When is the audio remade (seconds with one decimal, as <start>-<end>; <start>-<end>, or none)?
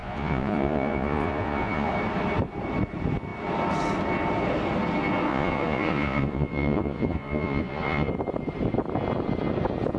0.0-1.9; 5.3-8.1